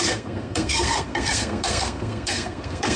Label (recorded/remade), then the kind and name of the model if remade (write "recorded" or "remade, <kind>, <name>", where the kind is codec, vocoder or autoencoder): remade, codec, SNAC